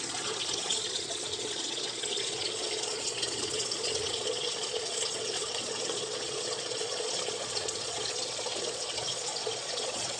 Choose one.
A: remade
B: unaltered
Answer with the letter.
A